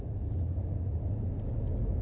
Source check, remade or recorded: recorded